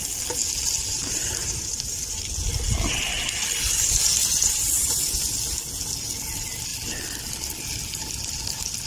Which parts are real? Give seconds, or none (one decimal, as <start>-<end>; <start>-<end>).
0.0-0.9; 2.2-4.2; 5.0-8.9